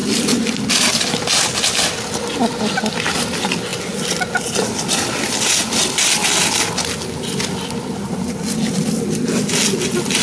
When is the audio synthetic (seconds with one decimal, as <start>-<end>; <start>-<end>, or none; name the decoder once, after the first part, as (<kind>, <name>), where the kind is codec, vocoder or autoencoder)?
none